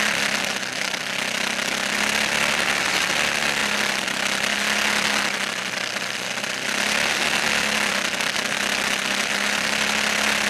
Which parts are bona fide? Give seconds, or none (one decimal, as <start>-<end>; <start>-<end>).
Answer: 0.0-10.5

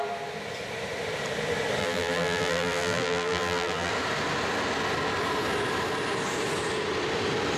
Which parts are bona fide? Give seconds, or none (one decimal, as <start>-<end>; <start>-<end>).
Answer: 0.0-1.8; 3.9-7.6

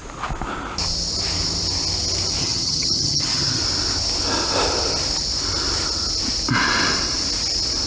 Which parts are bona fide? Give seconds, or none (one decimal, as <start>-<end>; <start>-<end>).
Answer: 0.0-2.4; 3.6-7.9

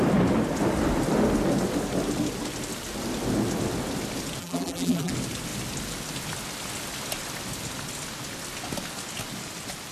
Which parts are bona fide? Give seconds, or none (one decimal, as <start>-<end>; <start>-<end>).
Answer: 0.0-4.4; 5.1-9.9

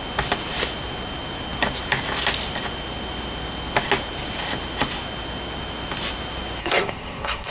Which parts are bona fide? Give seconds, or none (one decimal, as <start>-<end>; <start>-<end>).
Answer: 0.0-6.6